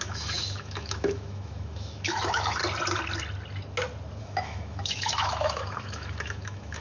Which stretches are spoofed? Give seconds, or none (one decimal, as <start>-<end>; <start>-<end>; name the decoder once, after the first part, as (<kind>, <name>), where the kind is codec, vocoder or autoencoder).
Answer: 0.0-2.6 (autoencoder, DAC-VAE); 4.2-6.8